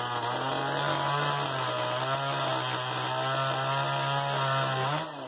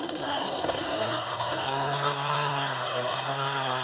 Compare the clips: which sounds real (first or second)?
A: first